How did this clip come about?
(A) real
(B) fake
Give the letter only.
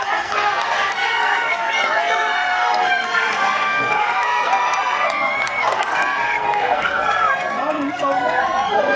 B